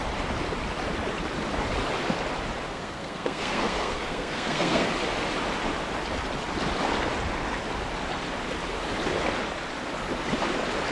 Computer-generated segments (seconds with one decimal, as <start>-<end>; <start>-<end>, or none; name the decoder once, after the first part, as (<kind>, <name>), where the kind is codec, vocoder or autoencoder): 2.7-4.9 (codec, SNAC)